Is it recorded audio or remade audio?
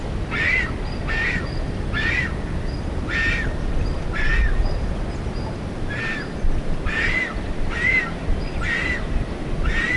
recorded